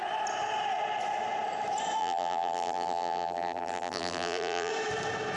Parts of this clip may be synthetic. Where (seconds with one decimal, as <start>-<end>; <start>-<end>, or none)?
2.0-4.7